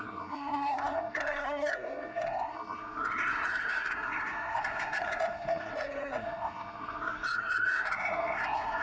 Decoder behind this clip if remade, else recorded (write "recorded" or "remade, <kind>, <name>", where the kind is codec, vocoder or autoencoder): remade, codec, SNAC